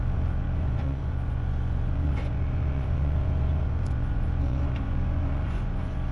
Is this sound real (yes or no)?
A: no